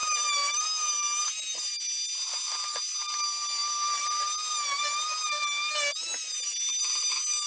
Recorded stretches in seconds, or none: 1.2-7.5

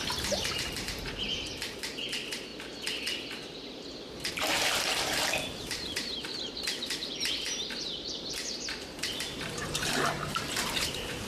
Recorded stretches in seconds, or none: 2.5-4.3